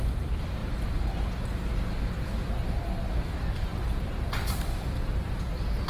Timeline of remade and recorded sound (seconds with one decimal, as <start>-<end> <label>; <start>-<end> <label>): 0.0-0.6 remade; 0.6-2.8 recorded; 2.8-5.9 remade